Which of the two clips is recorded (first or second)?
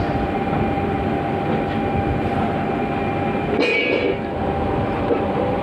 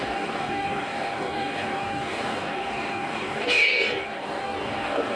first